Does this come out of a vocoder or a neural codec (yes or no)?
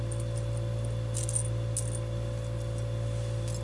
no